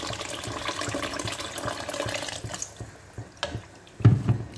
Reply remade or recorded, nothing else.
recorded